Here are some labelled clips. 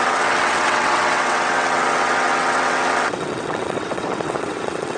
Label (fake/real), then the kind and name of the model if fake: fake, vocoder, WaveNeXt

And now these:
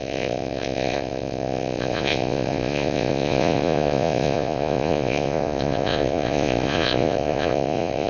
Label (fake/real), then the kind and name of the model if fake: fake, vocoder, Vocos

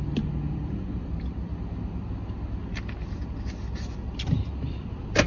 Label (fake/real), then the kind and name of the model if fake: real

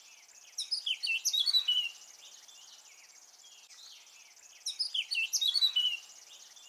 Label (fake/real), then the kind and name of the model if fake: real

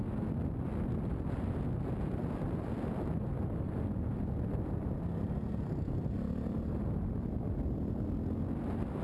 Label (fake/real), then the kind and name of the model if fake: real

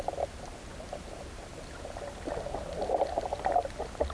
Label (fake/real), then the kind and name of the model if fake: real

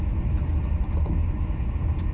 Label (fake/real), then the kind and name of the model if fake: real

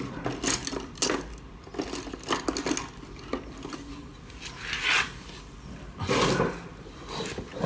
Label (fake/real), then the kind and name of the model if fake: real